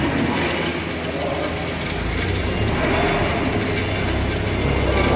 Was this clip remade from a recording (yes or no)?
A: no